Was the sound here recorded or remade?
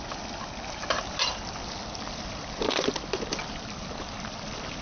remade